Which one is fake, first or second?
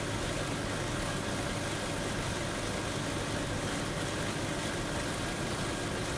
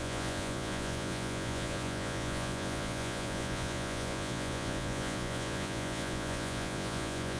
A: second